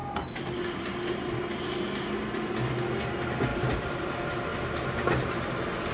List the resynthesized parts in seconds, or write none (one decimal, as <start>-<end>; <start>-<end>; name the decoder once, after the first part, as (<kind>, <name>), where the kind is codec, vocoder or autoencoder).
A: 3.5-4.1 (vocoder, BigVGAN v2); 4.5-5.5